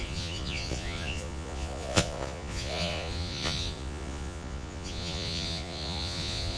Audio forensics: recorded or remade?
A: remade